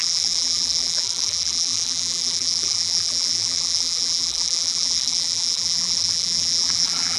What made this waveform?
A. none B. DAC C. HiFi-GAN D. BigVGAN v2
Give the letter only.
D